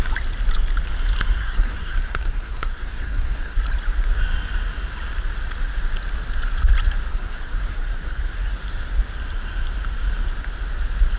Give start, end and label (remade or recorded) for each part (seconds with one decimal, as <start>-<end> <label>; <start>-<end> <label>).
0.0-1.4 recorded; 1.4-3.6 remade; 3.6-7.1 recorded; 7.1-8.5 remade; 8.5-11.2 recorded

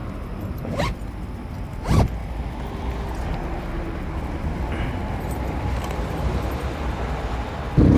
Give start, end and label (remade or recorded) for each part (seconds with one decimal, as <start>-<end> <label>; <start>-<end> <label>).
0.0-5.0 recorded; 5.0-6.9 remade; 6.9-8.0 recorded